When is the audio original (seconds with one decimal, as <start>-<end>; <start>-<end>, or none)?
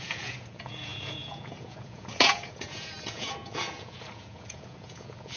none